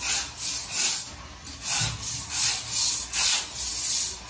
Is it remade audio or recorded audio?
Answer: recorded